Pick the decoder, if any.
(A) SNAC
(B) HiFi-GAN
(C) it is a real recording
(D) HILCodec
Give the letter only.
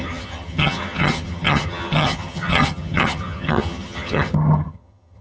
B